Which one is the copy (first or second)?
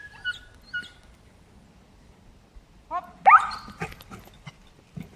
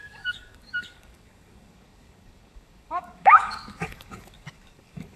second